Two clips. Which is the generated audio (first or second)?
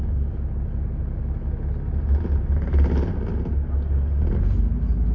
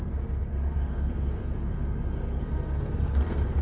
second